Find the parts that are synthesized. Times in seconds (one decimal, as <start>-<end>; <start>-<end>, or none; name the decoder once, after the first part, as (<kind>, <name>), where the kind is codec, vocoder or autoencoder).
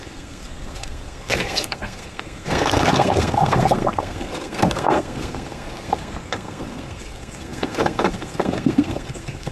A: 0.0-9.5 (codec, SNAC)